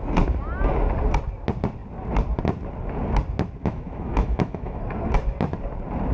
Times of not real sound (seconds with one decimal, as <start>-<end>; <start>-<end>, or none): 3.6-4.8

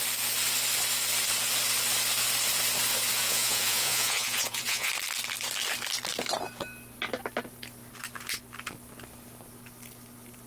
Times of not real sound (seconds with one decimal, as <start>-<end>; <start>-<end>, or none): 3.2-4.9

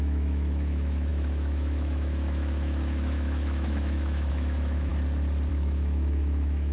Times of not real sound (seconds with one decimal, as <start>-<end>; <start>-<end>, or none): 0.0-4.9; 5.5-6.7

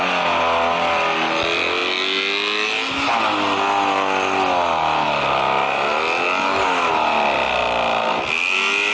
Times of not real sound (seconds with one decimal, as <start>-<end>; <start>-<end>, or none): none

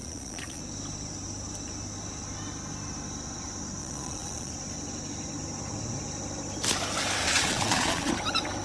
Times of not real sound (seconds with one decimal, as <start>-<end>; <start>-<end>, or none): 0.0-0.6; 3.8-4.5; 7.2-8.1